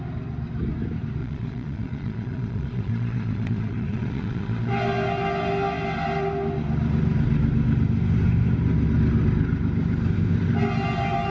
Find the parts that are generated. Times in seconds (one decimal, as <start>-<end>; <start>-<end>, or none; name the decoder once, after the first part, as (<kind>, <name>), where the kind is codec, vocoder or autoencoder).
1.2-4.7 (vocoder, Vocos)